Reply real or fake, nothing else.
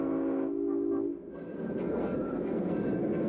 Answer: fake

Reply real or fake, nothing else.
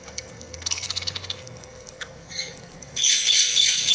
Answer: fake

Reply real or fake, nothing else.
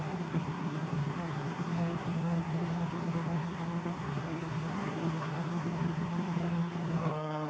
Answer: fake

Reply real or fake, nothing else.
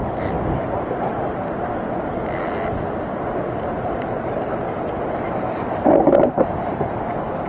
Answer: real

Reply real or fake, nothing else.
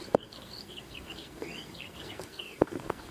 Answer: fake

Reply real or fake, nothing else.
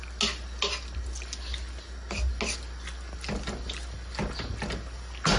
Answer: real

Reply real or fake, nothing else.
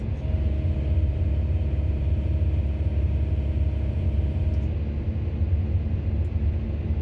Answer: real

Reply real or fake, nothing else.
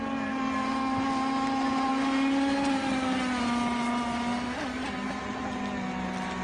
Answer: real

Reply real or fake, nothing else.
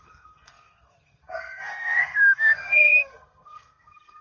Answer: fake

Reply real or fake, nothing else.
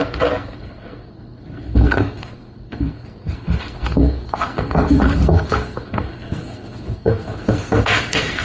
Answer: fake